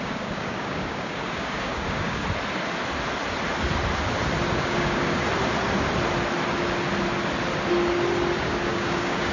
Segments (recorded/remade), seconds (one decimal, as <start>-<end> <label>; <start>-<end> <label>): 0.0-2.2 remade; 2.2-4.6 recorded; 4.6-5.2 remade; 5.2-8.4 recorded; 8.4-9.3 remade